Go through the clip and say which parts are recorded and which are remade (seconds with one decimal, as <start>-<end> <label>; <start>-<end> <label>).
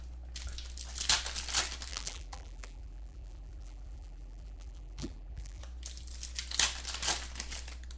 0.0-1.9 recorded; 1.9-5.6 remade; 5.6-8.0 recorded